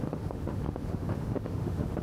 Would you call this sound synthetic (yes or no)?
yes